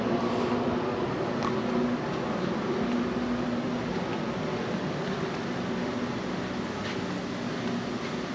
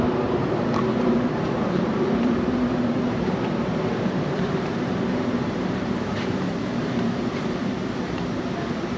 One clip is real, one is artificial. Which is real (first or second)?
first